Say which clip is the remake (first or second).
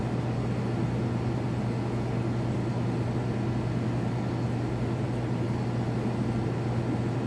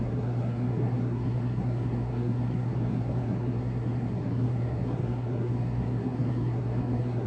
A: second